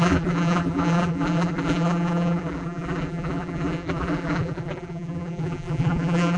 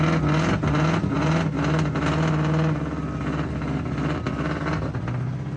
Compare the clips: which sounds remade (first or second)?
first